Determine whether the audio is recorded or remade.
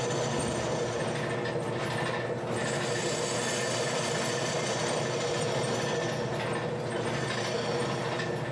recorded